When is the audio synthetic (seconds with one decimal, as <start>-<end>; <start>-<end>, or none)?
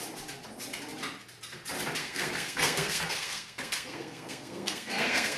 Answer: 2.0-5.4